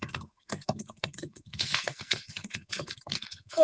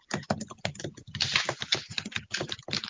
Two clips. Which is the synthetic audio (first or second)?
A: first